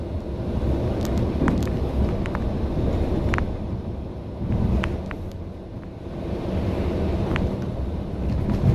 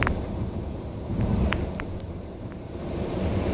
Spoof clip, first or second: second